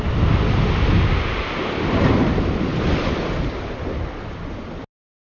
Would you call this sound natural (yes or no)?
yes